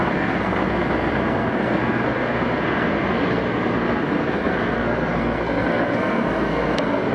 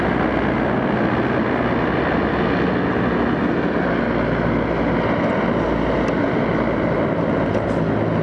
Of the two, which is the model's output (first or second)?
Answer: first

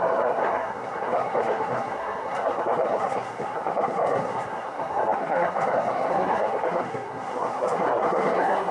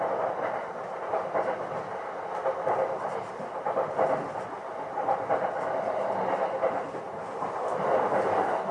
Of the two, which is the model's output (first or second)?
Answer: first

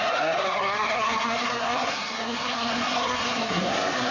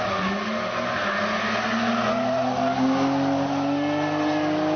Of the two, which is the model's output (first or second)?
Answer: first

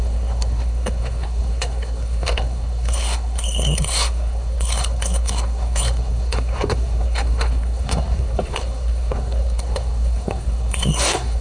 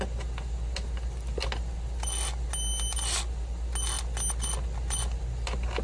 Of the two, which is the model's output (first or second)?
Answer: first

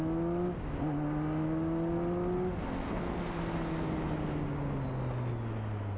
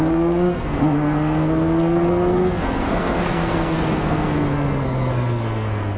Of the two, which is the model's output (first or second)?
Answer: second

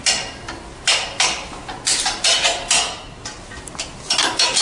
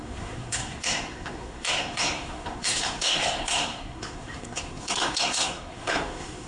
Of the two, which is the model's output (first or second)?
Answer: second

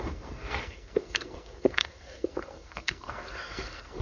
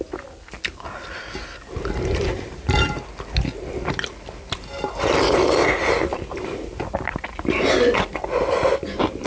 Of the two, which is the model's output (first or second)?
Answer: first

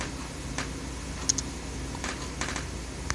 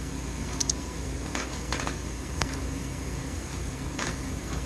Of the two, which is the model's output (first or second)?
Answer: second